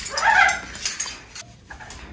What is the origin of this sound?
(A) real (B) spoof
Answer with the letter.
A